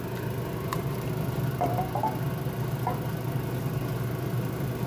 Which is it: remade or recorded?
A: recorded